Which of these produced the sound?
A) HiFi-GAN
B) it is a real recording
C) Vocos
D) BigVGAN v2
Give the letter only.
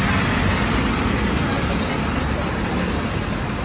B